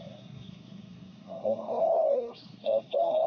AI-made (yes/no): yes